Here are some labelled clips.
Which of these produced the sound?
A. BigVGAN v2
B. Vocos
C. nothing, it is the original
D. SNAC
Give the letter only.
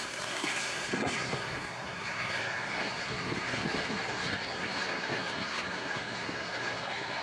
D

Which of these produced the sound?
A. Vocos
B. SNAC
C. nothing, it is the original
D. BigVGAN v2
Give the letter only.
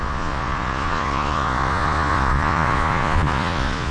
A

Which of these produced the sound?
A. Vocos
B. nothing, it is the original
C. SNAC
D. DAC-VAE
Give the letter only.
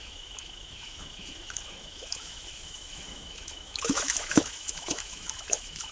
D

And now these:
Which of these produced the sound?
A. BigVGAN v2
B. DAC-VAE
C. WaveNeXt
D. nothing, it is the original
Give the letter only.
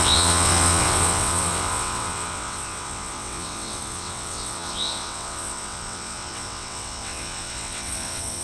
C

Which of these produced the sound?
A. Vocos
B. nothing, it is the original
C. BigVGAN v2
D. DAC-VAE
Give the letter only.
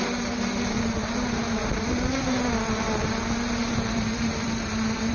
C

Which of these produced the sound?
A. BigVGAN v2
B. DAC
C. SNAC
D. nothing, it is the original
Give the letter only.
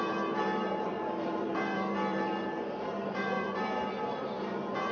A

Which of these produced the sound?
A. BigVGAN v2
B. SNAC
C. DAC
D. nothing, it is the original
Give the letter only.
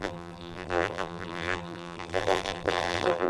A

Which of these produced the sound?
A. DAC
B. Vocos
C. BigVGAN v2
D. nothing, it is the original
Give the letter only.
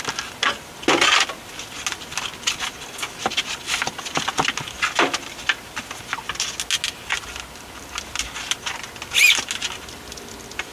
D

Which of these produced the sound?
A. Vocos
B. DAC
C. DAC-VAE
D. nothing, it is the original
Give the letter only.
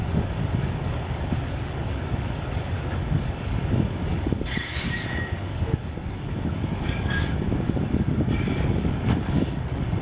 B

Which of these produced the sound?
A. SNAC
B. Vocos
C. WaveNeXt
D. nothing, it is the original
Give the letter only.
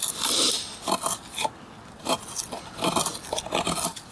D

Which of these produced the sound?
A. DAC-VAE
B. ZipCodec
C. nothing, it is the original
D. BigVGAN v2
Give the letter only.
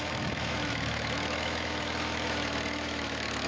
A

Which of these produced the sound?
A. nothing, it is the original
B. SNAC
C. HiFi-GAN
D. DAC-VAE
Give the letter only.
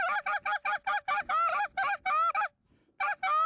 A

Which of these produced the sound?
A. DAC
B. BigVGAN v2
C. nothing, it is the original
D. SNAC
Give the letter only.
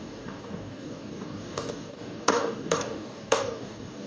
A